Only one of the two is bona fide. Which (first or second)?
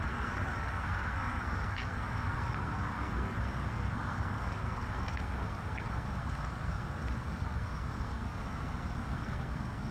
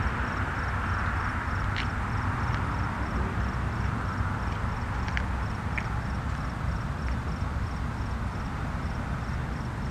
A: second